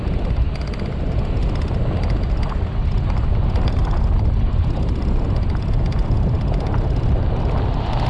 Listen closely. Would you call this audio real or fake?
real